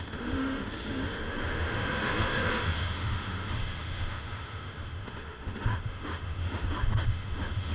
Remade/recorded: remade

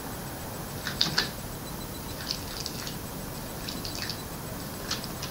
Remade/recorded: recorded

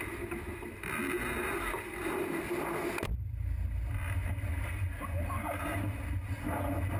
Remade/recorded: recorded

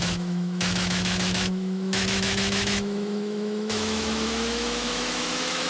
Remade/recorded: remade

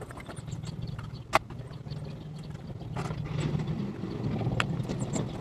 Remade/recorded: recorded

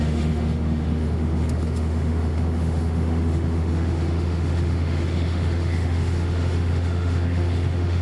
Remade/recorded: remade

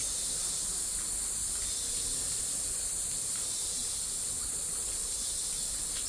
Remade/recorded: recorded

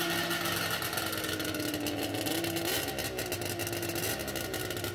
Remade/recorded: recorded